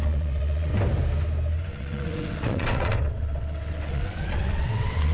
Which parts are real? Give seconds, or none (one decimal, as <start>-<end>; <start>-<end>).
0.7-1.7